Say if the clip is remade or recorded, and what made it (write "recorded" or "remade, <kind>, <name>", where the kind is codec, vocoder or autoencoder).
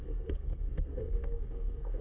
remade, codec, SNAC